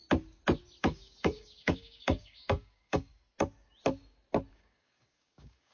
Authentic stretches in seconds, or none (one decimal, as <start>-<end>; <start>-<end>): 0.0-0.8; 3.1-4.5

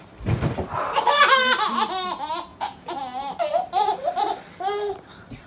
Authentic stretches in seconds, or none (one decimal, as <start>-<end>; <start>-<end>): 0.0-2.5; 3.0-5.5

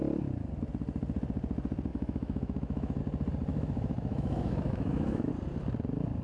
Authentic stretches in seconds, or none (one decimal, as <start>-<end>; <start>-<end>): 0.0-1.9; 3.0-3.5; 5.3-6.2

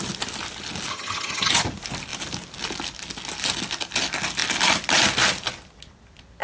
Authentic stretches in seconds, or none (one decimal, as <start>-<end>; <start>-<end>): 0.0-0.9; 1.5-6.4

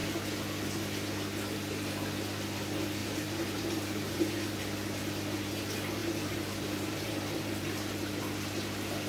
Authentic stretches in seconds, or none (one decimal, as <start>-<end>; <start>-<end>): 0.0-3.0; 4.6-6.0; 8.0-9.1

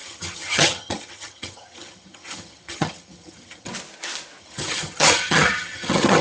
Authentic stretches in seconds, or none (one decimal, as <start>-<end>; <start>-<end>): 3.7-4.4

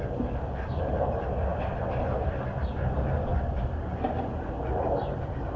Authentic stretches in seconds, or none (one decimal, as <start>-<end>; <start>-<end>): 0.0-5.6

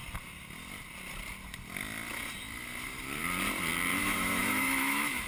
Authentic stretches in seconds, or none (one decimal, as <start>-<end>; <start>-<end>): 0.0-4.0